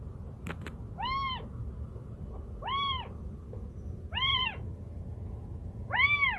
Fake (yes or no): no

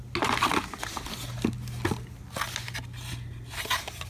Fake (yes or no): no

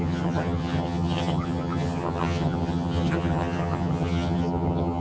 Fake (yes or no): yes